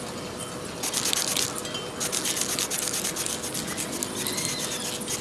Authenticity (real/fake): real